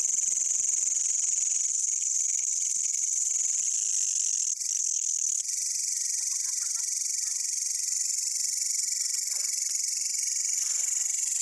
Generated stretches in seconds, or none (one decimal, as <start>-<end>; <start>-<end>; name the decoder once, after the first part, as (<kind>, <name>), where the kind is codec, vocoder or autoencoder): 1.7-3.3 (codec, HILCodec); 4.8-5.4